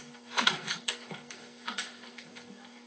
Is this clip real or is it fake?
fake